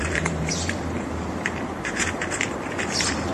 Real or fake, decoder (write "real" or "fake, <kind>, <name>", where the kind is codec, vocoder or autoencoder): fake, vocoder, BigVGAN v2